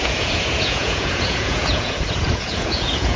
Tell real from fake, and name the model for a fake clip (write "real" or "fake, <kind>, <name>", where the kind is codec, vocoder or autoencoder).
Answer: fake, vocoder, Vocos